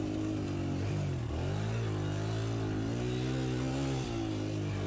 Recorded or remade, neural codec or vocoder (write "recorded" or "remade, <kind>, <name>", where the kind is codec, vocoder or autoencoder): recorded